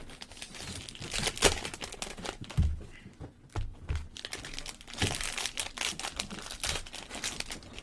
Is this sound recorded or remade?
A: recorded